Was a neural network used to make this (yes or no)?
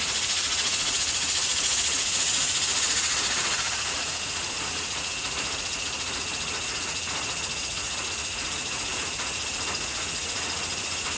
yes